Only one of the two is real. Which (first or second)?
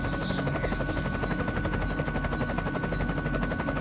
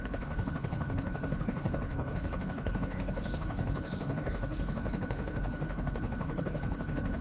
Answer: first